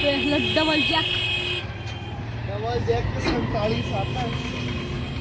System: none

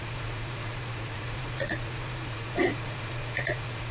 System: vocoder, Vocos